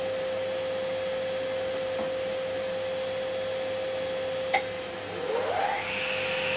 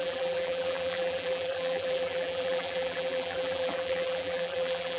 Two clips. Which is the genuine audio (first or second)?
first